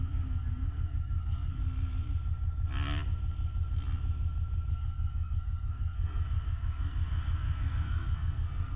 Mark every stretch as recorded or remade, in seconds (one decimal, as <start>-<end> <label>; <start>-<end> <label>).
0.0-1.6 remade; 1.6-4.7 recorded; 4.7-8.8 remade